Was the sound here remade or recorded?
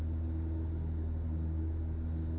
recorded